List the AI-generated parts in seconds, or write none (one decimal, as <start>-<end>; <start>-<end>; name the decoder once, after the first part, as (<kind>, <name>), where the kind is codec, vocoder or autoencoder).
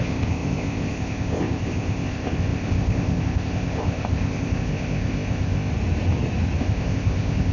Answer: 0.0-5.7 (codec, ZipCodec); 6.6-7.5